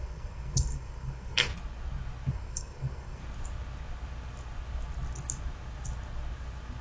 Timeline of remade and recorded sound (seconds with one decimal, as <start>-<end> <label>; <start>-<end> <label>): 0.0-1.5 remade; 1.5-2.3 recorded; 2.3-3.2 remade; 3.2-6.8 recorded